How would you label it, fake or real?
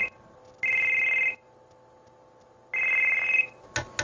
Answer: real